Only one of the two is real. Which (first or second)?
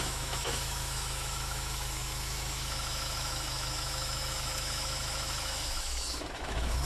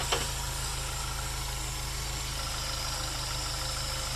second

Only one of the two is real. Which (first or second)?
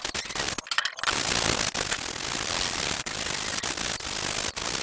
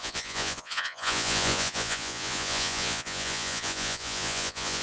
first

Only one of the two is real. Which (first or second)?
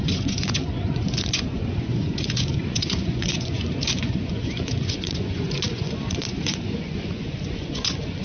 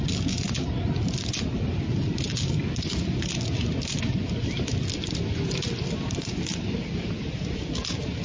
second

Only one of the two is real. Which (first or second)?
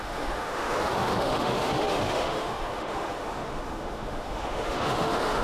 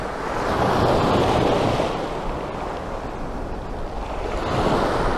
second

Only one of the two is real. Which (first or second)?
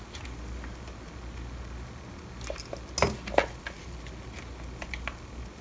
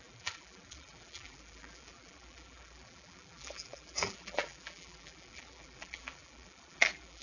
first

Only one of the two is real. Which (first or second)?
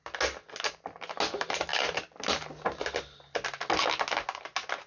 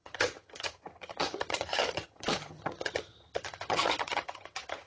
first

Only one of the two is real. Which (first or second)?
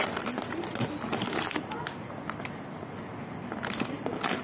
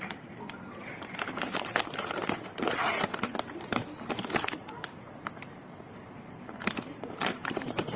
first